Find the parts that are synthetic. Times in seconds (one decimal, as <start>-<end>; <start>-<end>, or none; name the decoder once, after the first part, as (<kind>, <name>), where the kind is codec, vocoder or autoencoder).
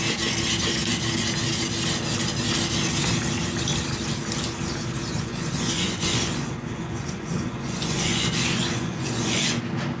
5.0-9.6 (vocoder, Vocos)